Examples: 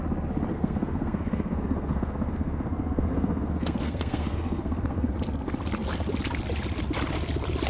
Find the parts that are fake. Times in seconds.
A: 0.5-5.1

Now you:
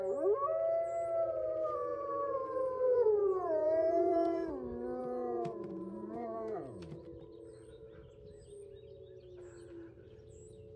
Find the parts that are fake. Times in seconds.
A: 1.9-4.5; 5.0-7.0

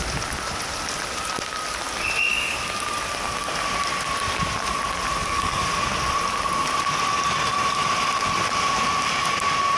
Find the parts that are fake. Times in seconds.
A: 2.3-2.8; 5.2-5.7

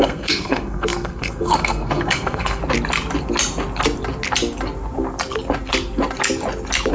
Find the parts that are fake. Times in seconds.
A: 0.0-2.6

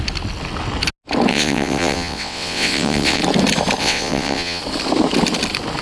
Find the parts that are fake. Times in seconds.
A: 1.3-3.2; 3.8-4.6

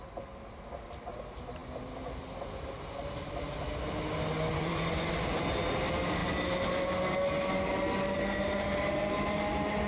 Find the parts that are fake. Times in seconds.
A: 4.5-5.1

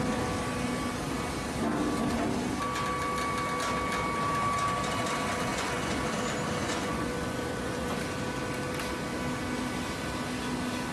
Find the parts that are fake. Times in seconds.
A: 5.5-6.0; 6.6-8.0